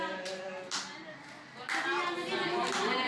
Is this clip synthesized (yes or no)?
no